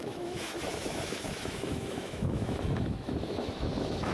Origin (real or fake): fake